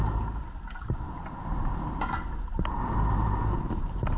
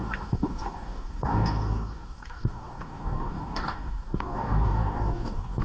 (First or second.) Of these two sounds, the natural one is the first